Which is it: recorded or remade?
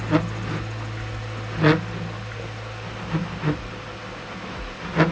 recorded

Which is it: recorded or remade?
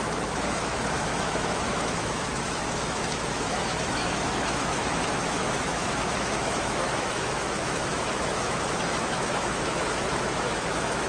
remade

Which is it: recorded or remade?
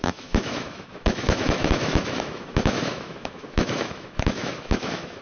remade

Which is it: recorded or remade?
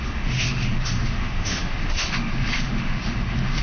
remade